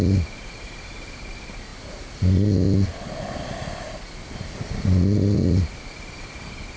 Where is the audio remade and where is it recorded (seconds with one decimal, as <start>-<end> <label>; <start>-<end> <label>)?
0.0-6.8 recorded